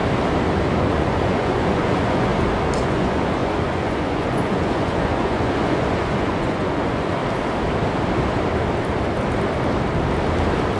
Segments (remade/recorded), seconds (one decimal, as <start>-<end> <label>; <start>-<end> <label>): 0.0-0.8 recorded; 0.8-2.3 remade; 2.3-2.8 recorded; 2.8-7.2 remade; 7.2-10.8 recorded